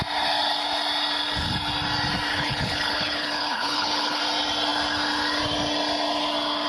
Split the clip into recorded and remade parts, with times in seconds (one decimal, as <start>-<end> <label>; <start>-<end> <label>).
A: 0.0-2.3 recorded; 2.3-4.2 remade; 4.2-6.7 recorded